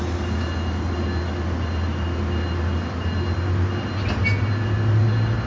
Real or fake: real